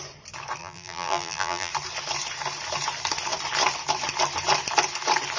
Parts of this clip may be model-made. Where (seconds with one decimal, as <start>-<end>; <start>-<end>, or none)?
0.6-1.7